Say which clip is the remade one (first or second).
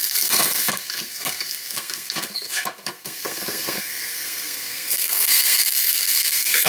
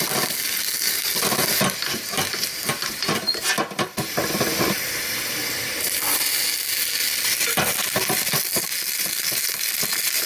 first